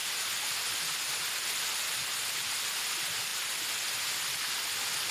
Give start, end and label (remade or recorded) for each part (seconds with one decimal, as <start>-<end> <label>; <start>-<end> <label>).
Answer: 0.0-5.1 recorded